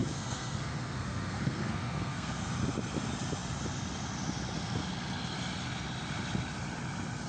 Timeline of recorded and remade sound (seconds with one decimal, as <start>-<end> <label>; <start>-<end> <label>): 0.0-2.5 remade; 2.5-7.3 recorded